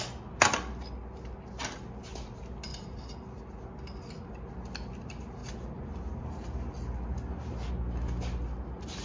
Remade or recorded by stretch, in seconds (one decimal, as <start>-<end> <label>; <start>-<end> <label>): 0.0-9.0 recorded